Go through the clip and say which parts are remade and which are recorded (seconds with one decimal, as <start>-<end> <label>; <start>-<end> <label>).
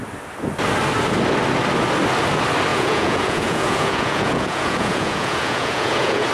0.0-2.7 recorded; 2.7-6.3 remade